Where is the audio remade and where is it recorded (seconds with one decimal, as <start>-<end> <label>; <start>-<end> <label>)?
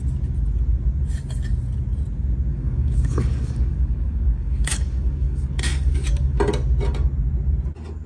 0.0-2.5 recorded; 2.5-6.4 remade; 6.4-8.1 recorded